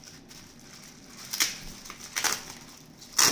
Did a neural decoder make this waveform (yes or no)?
no